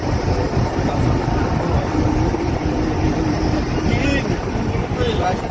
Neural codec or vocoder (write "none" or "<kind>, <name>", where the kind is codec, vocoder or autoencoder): none